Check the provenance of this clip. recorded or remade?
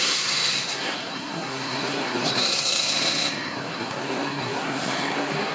remade